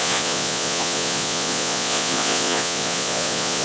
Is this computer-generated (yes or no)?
yes